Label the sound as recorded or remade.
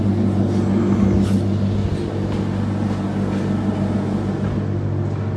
recorded